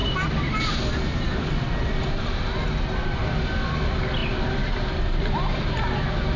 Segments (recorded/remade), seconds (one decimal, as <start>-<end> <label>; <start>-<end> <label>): 0.0-1.5 remade; 1.5-4.2 recorded; 4.2-5.7 remade; 5.7-6.4 recorded